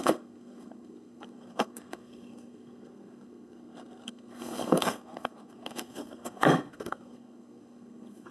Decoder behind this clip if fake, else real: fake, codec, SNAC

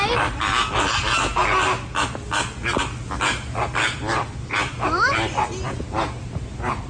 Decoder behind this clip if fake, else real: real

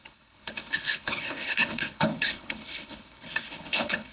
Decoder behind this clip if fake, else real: fake, codec, HILCodec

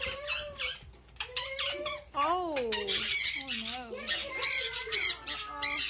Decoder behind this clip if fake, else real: real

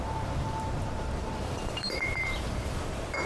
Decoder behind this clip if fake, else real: fake, vocoder, BigVGAN v2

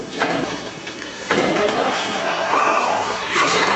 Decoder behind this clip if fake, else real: fake, codec, SNAC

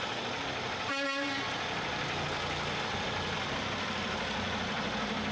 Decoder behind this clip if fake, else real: real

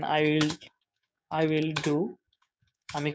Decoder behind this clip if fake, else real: fake, codec, DAC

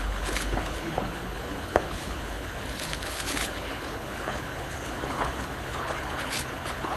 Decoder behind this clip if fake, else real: fake, codec, HILCodec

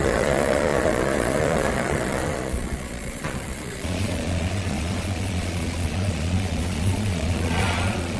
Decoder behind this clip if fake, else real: fake, vocoder, Vocos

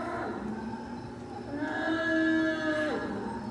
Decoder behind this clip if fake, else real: real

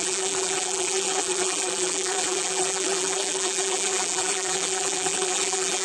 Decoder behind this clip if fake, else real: fake, vocoder, BigVGAN v2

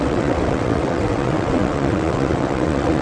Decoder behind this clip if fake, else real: fake, vocoder, WaveNeXt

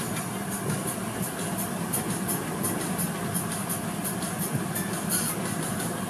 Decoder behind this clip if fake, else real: real